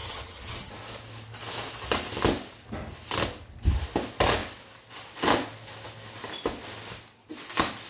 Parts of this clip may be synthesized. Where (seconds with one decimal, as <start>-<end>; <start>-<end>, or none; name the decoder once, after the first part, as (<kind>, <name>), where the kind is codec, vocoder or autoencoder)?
0.0-0.7 (vocoder, HiFi-GAN)